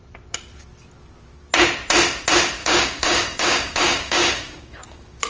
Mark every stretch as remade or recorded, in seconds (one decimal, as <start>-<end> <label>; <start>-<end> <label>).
0.0-2.6 recorded; 2.6-5.3 remade